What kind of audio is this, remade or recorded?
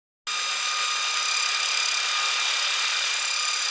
recorded